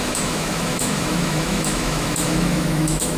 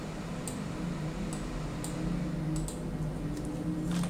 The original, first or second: second